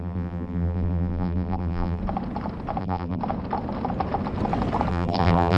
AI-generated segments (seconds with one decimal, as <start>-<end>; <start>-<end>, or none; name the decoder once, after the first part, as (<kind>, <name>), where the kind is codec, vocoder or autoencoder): 0.0-2.0 (vocoder, BigVGAN v2); 2.8-3.2; 4.9-5.6